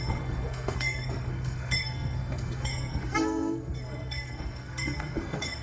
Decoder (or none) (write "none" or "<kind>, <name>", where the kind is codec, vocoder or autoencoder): codec, SNAC